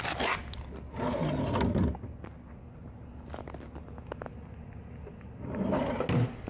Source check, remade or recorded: recorded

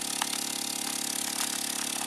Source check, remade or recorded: recorded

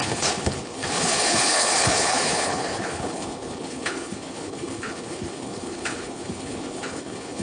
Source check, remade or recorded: remade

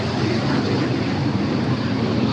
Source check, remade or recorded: recorded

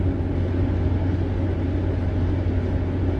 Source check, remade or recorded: recorded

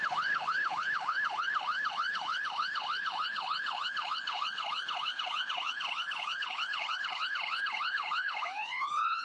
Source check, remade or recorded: remade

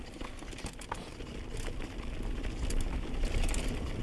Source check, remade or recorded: recorded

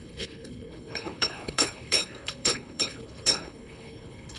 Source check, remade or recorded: remade